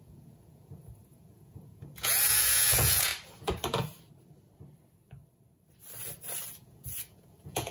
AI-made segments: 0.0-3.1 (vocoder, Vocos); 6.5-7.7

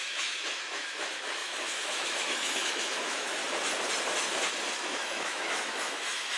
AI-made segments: 0.0-3.4 (autoencoder, DAC-VAE); 4.8-6.4

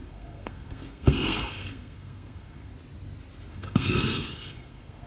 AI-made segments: 0.0-2.7 (codec, SNAC); 3.5-5.1

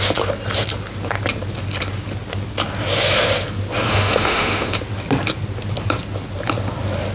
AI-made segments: 3.9-4.8 (autoencoder, DAC-VAE)